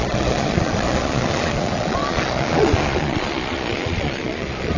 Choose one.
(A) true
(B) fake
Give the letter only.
B